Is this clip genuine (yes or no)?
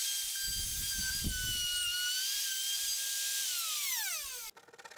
yes